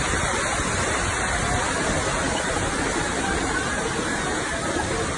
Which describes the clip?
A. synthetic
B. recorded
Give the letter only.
B